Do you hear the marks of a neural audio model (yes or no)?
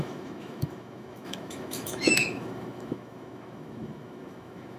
yes